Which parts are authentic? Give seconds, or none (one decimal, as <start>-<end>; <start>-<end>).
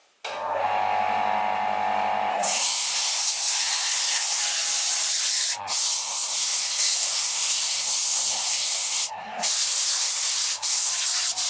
0.0-2.3; 4.4-5.6; 10.9-11.5